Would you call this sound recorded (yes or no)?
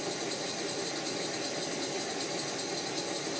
yes